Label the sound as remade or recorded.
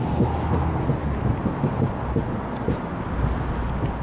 recorded